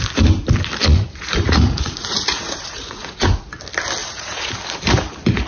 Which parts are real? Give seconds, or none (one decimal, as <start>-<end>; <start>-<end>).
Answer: 0.0-0.9; 3.5-4.0; 4.5-5.5